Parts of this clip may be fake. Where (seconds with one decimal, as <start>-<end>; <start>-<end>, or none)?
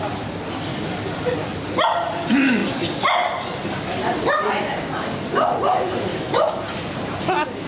6.1-6.6